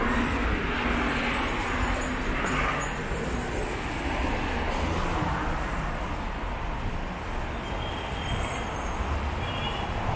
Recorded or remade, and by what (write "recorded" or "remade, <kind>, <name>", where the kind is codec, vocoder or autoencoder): recorded